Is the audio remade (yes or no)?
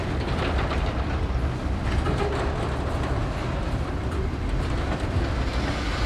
no